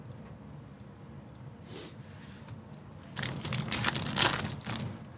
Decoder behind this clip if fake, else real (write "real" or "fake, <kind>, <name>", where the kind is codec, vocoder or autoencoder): real